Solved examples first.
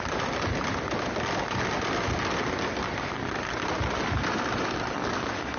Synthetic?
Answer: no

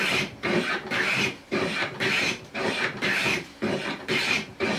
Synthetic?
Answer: yes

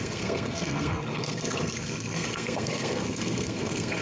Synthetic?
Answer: yes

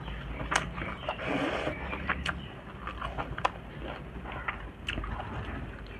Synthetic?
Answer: no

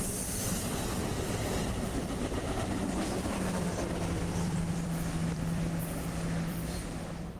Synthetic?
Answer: yes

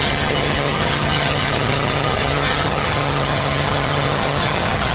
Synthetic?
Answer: yes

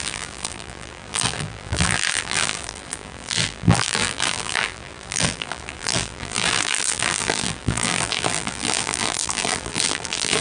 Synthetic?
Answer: yes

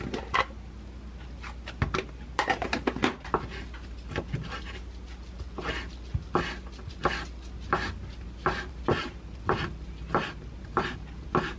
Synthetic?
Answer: no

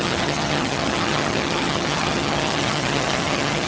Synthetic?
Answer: yes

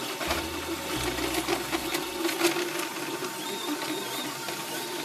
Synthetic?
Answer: no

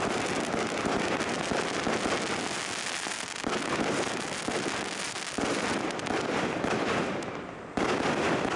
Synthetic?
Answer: no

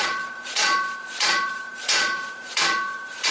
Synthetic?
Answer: yes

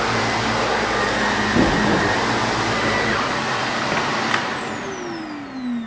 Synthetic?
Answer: no